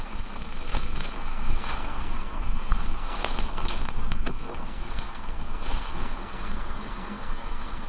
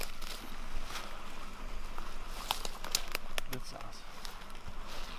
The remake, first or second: first